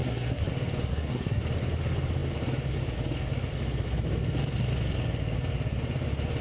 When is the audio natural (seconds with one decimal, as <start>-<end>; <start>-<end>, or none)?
0.5-0.9; 1.4-6.4

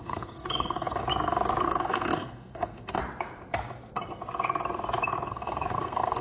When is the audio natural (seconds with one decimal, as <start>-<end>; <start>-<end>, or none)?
1.0-1.6; 3.0-5.3